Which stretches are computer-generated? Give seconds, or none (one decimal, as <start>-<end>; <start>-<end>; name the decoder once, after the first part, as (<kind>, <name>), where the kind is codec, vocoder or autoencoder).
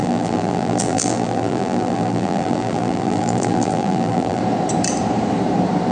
0.0-4.4 (vocoder, BigVGAN v2)